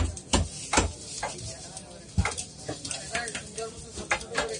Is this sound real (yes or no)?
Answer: yes